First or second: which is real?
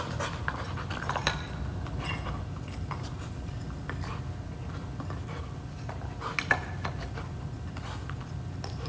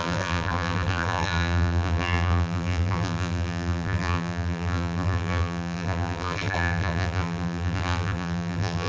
first